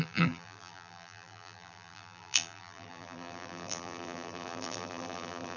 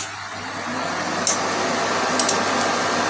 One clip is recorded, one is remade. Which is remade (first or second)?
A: first